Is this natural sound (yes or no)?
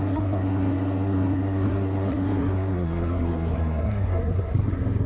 no